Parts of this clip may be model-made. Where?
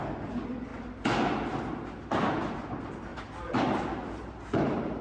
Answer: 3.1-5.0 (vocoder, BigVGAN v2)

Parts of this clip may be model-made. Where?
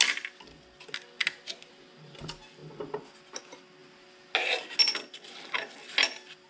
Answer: none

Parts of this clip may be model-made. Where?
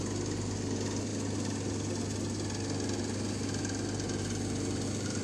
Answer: none